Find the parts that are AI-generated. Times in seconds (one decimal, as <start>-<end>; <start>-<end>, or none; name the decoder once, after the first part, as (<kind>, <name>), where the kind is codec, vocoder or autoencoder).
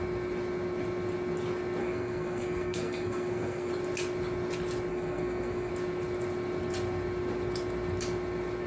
1.8-3.7 (codec, SNAC); 4.9-5.7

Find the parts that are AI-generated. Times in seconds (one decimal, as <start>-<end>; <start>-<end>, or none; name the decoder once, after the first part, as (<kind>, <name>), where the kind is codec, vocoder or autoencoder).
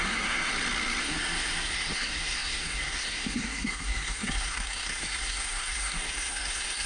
0.0-0.5 (codec, SNAC); 1.0-6.9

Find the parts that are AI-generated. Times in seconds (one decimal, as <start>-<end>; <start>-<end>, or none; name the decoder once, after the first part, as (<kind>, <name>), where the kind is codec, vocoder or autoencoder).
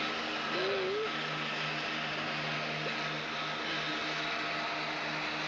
none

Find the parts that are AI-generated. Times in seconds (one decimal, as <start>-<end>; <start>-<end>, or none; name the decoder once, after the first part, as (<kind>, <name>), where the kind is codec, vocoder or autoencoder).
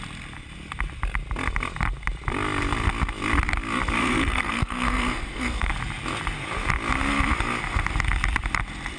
4.0-5.7 (codec, SNAC)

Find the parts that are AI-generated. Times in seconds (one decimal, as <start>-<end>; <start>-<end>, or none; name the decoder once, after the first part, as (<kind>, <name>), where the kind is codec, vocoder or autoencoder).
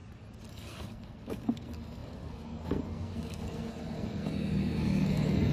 0.5-5.5 (codec, SNAC)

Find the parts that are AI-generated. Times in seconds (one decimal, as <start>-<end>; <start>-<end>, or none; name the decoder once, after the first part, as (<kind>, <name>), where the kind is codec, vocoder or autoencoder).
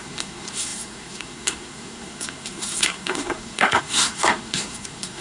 0.0-5.2 (codec, SNAC)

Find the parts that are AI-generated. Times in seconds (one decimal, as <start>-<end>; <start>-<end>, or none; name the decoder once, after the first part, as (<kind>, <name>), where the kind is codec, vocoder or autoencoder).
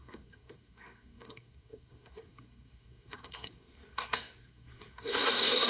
0.0-5.7 (codec, SNAC)